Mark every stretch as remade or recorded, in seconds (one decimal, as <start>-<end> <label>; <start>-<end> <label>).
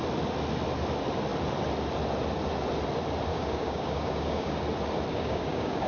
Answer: 0.0-3.3 recorded; 3.3-4.6 remade; 4.6-5.1 recorded; 5.1-5.9 remade